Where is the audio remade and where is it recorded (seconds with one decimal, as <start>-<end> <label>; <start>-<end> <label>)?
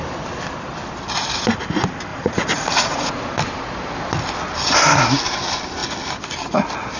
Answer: 0.0-2.1 recorded; 2.1-3.1 remade; 3.1-7.0 recorded